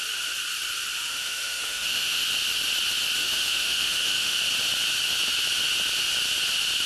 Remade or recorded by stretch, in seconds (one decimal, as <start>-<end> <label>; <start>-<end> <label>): 0.0-1.1 recorded; 1.1-2.2 remade; 2.2-3.2 recorded; 3.2-4.4 remade; 4.4-6.9 recorded